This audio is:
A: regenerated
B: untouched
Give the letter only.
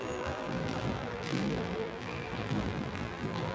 A